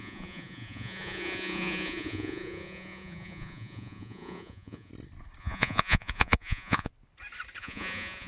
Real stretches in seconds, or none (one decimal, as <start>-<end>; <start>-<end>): 4.9-5.4; 6.9-7.6